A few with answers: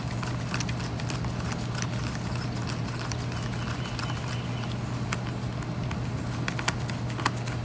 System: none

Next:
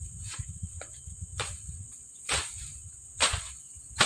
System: vocoder, WaveNeXt